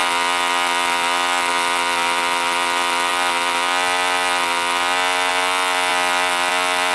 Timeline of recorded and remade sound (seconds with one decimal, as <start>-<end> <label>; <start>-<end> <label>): 0.0-6.9 recorded